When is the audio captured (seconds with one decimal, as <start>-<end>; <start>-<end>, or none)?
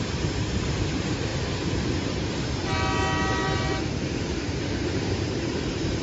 1.3-4.0